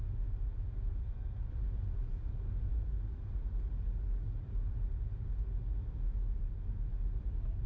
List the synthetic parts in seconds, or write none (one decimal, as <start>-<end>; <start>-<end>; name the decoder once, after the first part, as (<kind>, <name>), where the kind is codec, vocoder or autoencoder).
1.0-1.5 (codec, SNAC)